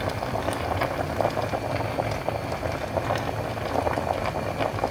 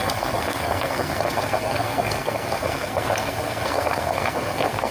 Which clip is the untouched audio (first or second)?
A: first